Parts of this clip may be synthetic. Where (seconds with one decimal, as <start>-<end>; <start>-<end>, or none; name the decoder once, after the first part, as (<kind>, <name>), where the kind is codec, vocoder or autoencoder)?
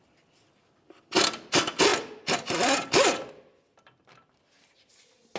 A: none